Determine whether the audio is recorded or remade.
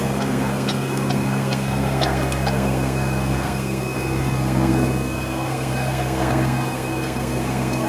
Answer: remade